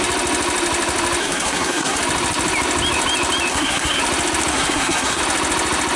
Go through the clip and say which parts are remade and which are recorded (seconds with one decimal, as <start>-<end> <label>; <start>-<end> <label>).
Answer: 0.0-1.2 recorded; 1.2-2.0 remade; 2.0-3.5 recorded; 3.5-4.0 remade; 4.0-4.5 recorded; 4.5-5.2 remade; 5.2-6.0 recorded